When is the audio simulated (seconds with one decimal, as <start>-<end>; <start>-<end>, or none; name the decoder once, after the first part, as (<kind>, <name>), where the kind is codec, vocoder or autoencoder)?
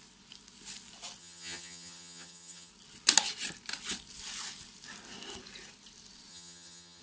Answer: 1.2-2.7 (vocoder, HiFi-GAN); 6.3-7.0